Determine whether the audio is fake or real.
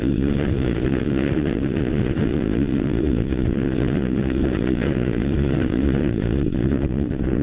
fake